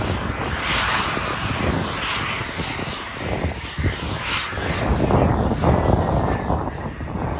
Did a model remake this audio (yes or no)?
no